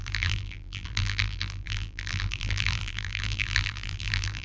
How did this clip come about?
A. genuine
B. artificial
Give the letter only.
B